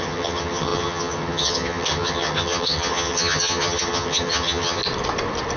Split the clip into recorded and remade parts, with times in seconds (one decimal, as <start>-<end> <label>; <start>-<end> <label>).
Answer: 0.0-4.8 remade; 4.8-5.6 recorded